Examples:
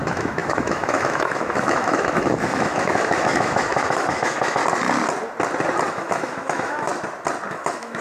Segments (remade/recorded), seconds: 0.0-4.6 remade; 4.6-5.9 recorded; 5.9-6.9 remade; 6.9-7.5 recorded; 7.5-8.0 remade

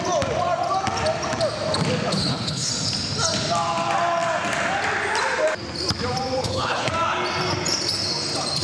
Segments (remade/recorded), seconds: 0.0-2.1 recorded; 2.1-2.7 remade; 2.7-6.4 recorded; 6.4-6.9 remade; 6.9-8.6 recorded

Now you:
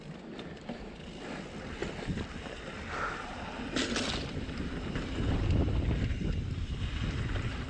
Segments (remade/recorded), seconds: 0.0-7.7 recorded

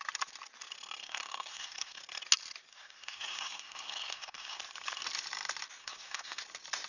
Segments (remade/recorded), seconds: 0.0-1.0 recorded; 1.0-2.0 remade; 2.0-2.7 recorded; 2.7-4.6 remade; 4.6-5.8 recorded; 5.8-6.4 remade; 6.4-6.9 recorded

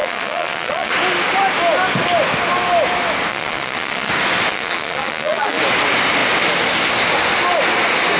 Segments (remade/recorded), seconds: 0.0-0.9 remade; 0.9-3.3 recorded; 3.3-4.1 remade; 4.1-4.5 recorded; 4.5-5.6 remade; 5.6-8.2 recorded

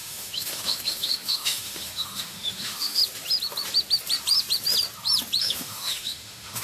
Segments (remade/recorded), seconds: 0.0-3.0 remade; 3.0-5.4 recorded; 5.4-6.6 remade

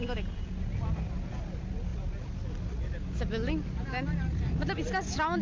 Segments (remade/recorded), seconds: 0.0-5.4 recorded